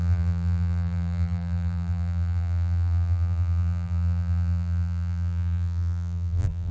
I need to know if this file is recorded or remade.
remade